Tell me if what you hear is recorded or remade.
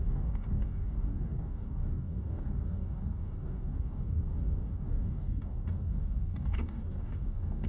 remade